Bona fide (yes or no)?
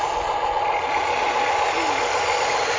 yes